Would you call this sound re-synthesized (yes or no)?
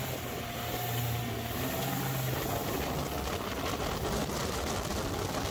no